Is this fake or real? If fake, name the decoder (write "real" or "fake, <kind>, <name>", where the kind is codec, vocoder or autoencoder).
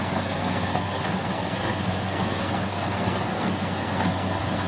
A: fake, codec, SNAC